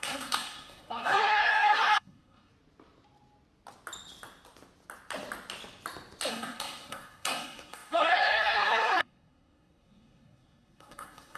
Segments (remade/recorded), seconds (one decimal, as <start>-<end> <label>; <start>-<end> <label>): 0.0-2.5 remade; 2.5-6.3 recorded; 6.3-11.4 remade